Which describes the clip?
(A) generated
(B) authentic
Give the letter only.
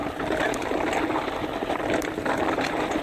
B